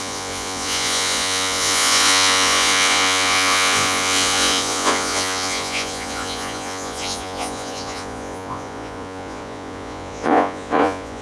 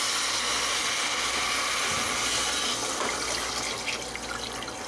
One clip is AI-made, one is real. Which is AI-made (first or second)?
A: first